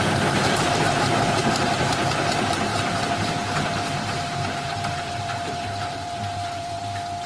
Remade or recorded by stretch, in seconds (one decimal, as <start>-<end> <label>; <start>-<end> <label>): 0.0-0.4 recorded; 0.4-2.1 remade; 2.1-2.7 recorded; 2.7-6.8 remade; 6.8-7.3 recorded